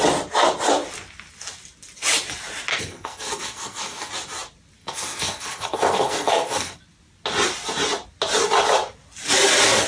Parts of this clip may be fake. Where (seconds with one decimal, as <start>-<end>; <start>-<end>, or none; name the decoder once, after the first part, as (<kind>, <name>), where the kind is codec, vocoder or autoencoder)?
2.7-4.1 (codec, SNAC); 4.8-6.8